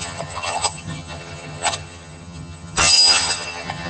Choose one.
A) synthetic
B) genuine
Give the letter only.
A